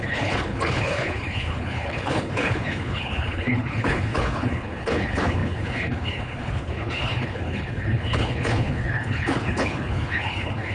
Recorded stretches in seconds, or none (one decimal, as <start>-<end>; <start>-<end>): none